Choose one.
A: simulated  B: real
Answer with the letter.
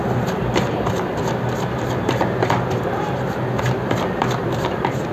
B